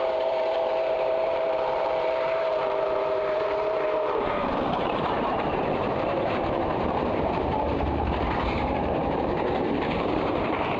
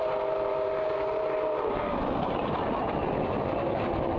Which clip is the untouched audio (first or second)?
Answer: second